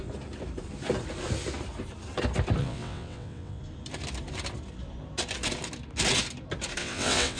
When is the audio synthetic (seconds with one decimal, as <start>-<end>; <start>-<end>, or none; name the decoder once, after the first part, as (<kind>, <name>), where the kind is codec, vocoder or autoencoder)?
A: 2.6-3.6 (vocoder, WaveNeXt); 6.8-7.4